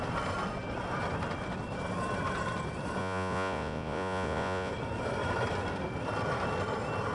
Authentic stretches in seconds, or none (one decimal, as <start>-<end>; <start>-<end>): 0.0-3.0; 4.7-7.1